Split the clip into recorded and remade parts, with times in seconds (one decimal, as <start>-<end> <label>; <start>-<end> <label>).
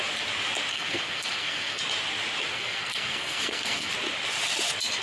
0.0-0.7 recorded; 0.7-1.8 remade; 1.8-2.5 recorded; 2.5-3.9 remade; 3.9-5.0 recorded